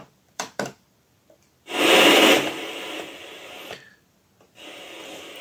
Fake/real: fake